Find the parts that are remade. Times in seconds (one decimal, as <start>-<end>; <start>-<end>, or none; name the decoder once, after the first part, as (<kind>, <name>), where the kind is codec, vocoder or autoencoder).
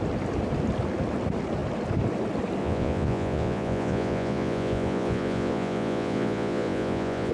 2.6-7.3 (vocoder, Vocos)